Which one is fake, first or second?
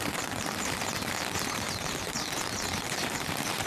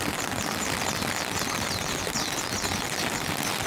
first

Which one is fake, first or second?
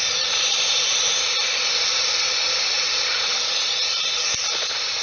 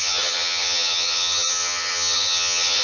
second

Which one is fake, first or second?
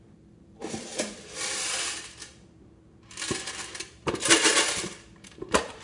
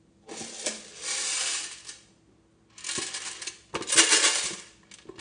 first